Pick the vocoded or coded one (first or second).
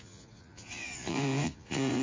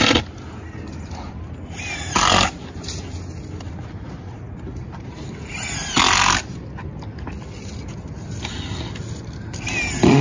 first